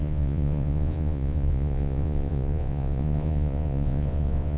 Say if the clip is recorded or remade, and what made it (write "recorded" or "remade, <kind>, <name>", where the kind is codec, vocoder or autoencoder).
remade, vocoder, Vocos